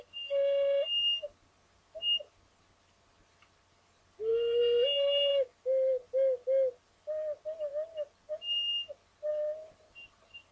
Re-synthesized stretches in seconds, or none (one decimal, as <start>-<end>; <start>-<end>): none